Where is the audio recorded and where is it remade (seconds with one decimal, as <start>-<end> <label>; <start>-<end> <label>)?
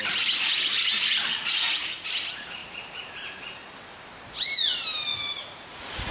0.0-1.3 recorded; 1.3-2.0 remade; 2.0-5.1 recorded; 5.1-6.1 remade